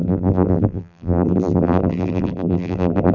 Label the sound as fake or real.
fake